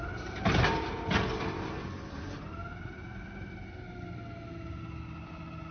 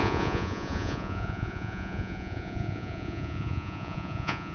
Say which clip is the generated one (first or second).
second